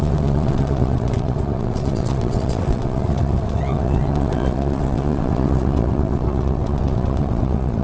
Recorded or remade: remade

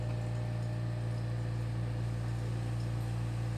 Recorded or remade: recorded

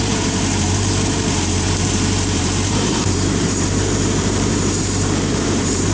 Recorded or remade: remade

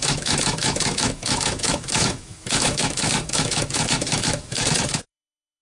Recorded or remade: remade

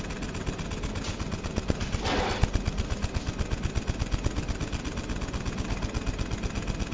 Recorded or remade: recorded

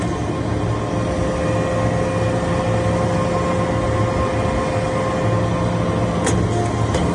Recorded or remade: recorded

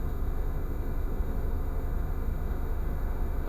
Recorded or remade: remade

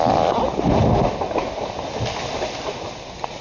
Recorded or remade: recorded